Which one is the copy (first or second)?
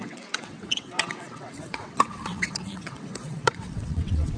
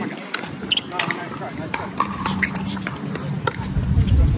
first